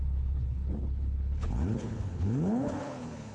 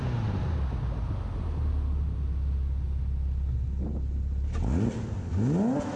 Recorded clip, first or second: second